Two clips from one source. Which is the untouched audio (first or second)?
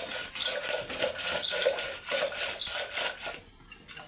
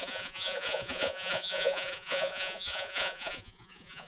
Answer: first